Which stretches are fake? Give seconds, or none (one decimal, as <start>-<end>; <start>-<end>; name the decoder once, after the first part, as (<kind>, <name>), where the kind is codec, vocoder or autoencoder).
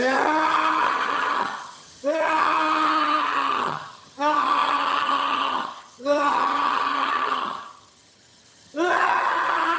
0.0-9.8 (vocoder, HiFi-GAN)